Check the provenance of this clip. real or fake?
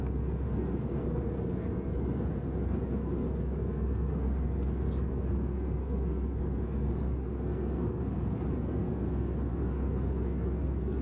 fake